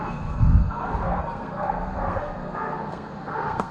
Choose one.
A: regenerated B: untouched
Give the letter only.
A